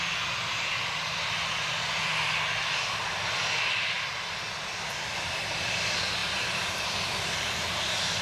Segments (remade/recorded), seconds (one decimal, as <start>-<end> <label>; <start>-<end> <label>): 0.0-8.2 recorded